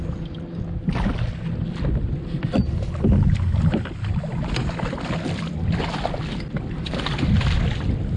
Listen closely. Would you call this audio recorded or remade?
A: recorded